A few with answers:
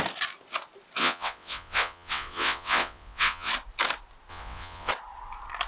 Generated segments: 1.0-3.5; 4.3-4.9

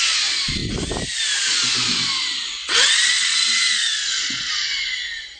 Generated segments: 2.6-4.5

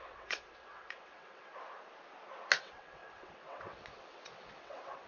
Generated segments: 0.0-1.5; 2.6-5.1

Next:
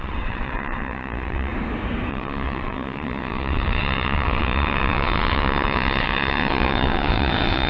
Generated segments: 0.0-1.5; 2.1-7.7

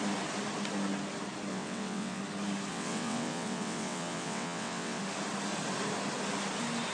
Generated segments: 1.5-2.2; 2.7-5.0

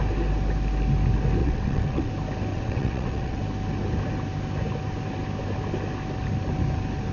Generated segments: 1.4-2.1; 2.5-3.4

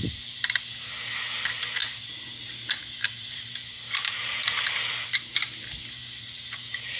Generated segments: none

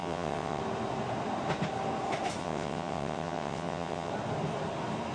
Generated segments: 0.0-0.6; 2.4-4.1